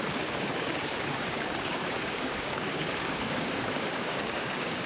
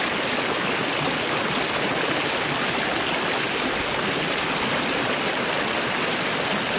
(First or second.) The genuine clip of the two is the second